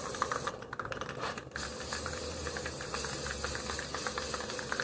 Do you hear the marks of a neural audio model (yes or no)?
no